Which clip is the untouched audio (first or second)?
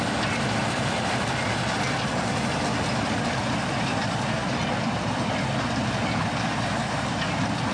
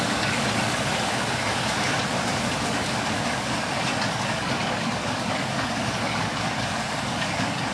first